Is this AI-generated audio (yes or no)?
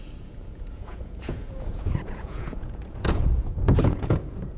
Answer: yes